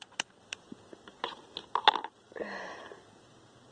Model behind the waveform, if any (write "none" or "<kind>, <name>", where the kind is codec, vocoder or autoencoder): none